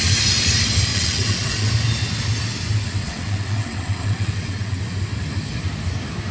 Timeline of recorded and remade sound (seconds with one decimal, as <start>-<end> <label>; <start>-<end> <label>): 0.0-0.9 recorded; 0.9-1.7 remade; 1.7-3.0 recorded; 3.0-4.8 remade; 4.8-6.3 recorded